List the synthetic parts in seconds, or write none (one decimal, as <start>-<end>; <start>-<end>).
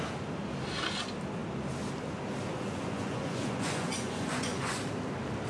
2.5-4.8